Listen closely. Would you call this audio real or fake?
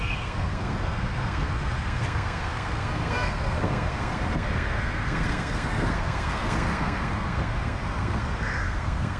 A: fake